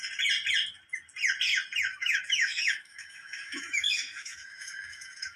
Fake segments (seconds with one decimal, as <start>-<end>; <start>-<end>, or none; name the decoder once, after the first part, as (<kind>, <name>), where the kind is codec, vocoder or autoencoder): 1.9-5.4 (autoencoder, DAC-VAE)